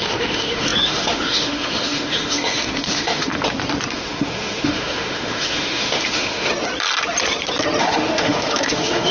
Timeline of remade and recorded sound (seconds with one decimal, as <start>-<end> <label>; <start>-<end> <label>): 0.0-3.3 remade; 3.3-3.9 recorded; 3.9-6.5 remade; 6.5-7.8 recorded; 7.8-9.1 remade